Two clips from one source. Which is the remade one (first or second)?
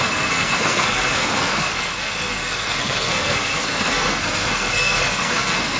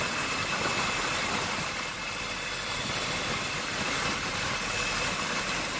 first